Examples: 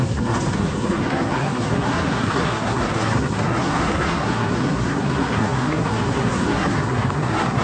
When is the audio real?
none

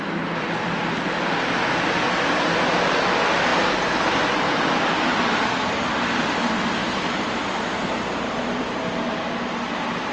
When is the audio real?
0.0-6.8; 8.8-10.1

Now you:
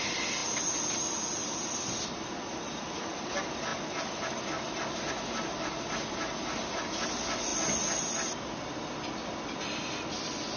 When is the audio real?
0.0-10.6

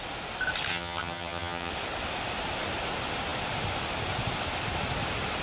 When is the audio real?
0.0-0.7; 1.7-5.4